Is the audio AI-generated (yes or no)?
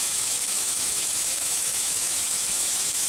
yes